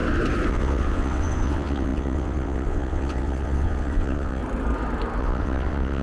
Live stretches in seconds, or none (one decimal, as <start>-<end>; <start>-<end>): 0.0-0.5; 4.4-5.2